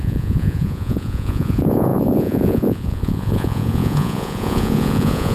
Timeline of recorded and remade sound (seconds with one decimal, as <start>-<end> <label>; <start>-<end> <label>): 0.0-5.3 remade